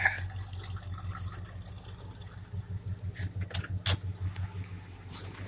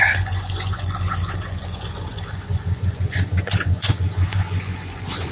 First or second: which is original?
first